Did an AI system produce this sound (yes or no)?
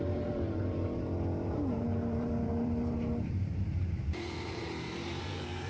yes